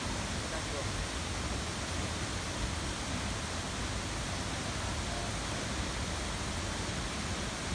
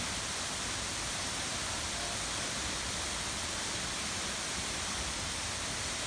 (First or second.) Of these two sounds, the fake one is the second